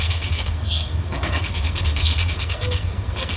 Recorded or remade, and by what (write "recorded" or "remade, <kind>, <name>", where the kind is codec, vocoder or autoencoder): remade, codec, SNAC